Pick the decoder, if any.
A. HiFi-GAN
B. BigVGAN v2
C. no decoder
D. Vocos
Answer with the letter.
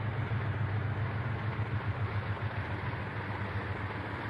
C